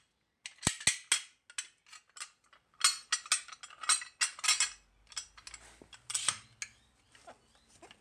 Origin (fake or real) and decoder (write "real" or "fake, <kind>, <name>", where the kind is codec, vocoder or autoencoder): real